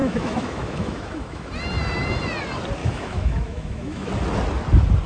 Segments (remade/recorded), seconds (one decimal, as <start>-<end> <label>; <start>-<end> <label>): 0.0-1.5 remade; 1.5-2.8 recorded; 2.8-4.1 remade; 4.1-5.1 recorded